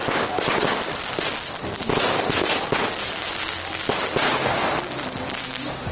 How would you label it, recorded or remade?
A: recorded